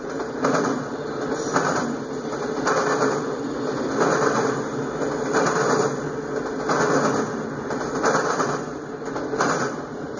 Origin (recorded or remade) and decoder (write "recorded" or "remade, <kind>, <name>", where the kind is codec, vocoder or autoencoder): recorded